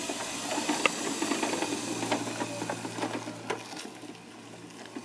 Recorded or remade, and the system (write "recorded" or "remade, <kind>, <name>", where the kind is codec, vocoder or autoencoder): recorded